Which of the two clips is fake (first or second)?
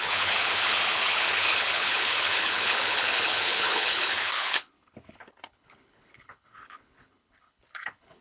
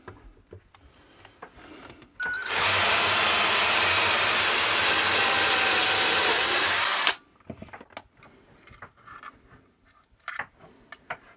first